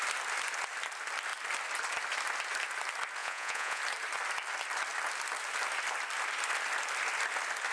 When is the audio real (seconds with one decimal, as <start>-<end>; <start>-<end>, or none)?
0.0-3.2; 3.8-7.7